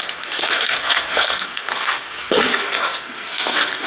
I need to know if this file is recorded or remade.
remade